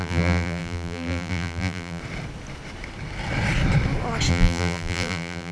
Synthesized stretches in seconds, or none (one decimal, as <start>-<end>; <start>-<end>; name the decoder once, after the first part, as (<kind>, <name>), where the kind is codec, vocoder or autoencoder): 0.0-2.0 (vocoder, BigVGAN v2); 4.3-5.5